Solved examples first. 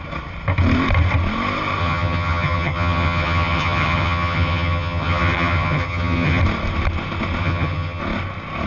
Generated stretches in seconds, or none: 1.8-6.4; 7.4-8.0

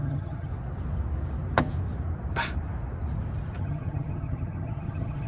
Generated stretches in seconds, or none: 0.0-0.5; 3.6-5.3

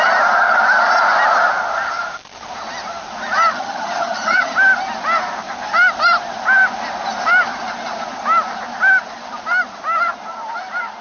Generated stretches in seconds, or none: 3.5-4.5

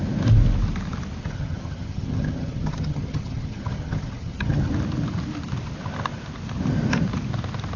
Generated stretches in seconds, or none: 1.2-4.7

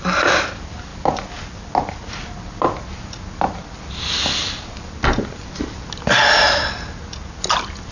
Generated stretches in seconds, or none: none

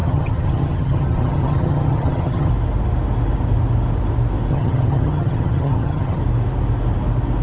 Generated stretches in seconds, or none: 0.0-2.5; 4.5-6.2

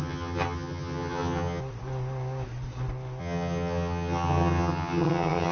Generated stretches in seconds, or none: 0.0-1.6; 3.2-5.5

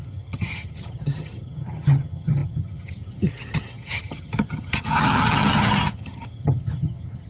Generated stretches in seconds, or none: 0.0-7.3